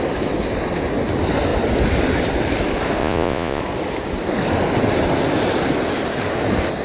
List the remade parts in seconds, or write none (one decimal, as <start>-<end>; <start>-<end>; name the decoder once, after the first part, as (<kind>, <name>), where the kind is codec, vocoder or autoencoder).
3.0-3.6 (vocoder, Vocos)